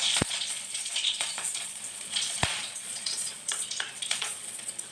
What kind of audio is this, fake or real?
fake